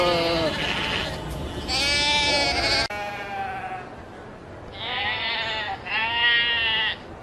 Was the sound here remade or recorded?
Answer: recorded